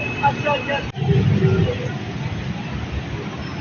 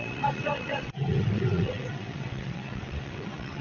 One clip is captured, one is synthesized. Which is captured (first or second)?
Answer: first